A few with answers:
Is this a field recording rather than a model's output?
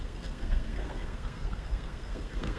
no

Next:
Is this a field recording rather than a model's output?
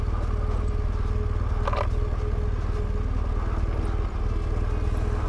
yes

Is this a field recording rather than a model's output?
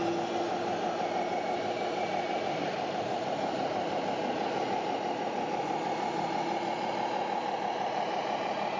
yes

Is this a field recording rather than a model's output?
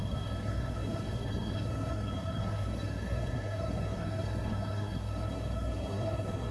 no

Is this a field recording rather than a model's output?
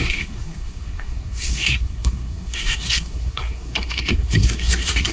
no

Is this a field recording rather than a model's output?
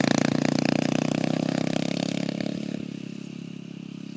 yes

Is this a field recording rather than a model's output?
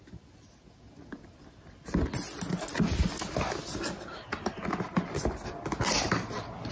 yes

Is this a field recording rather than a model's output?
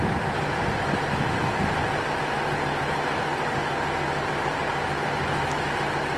yes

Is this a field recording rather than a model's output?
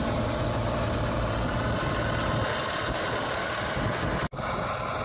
yes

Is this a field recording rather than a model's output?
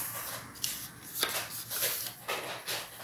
yes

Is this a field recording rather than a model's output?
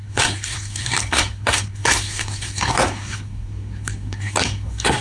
no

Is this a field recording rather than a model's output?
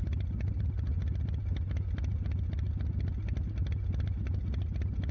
yes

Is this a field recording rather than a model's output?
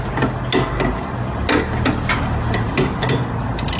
yes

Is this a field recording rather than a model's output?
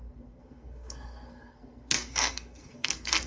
no